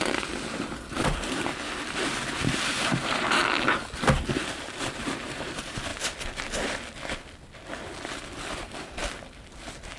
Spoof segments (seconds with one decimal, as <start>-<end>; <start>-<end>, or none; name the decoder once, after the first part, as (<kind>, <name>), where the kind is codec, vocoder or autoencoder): 0.0-1.5 (vocoder, BigVGAN v2); 2.3-3.4; 4.5-5.9; 8.5-9.0